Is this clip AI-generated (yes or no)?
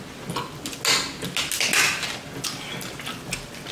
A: no